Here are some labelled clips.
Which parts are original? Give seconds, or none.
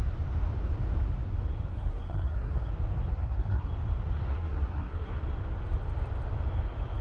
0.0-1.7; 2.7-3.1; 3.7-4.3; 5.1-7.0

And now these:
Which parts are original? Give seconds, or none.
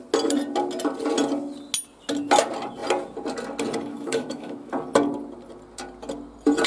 0.0-3.9; 4.7-6.7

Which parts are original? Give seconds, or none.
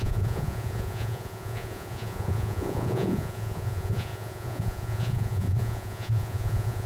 none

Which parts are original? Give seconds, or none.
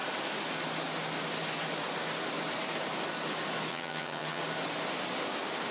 0.0-3.7; 4.4-5.7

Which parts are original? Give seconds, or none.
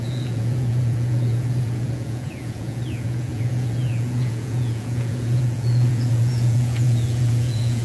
none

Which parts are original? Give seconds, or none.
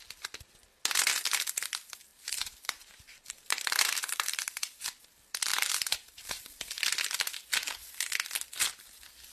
0.0-2.1; 4.8-5.5; 6.3-9.3